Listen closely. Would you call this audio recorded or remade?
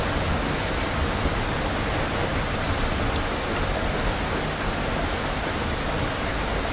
recorded